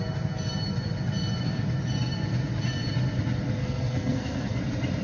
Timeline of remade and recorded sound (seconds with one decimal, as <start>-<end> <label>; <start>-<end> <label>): 0.0-3.6 recorded; 3.6-4.6 remade; 4.6-5.0 recorded